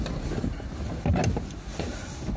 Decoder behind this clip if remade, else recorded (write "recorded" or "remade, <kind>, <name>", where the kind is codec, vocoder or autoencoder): recorded